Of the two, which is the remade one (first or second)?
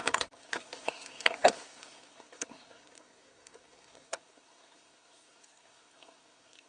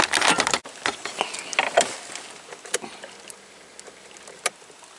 first